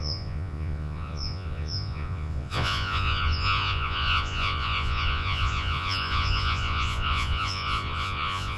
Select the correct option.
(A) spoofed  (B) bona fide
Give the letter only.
A